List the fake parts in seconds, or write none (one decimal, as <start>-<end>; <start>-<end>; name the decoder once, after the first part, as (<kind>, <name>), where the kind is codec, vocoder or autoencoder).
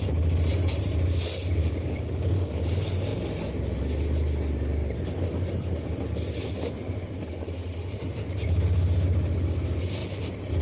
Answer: 1.6-2.5 (codec, DAC)